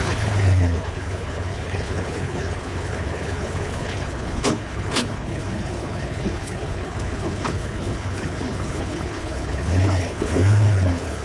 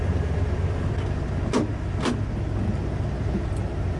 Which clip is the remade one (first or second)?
first